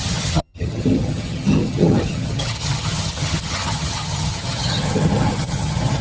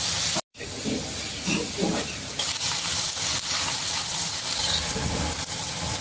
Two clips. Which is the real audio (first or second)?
second